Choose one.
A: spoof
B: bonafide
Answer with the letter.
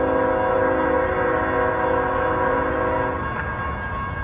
B